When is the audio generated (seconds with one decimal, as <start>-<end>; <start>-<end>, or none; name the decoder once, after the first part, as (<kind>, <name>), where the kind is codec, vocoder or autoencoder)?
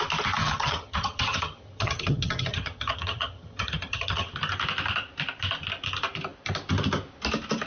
0.4-4.3 (vocoder, HiFi-GAN)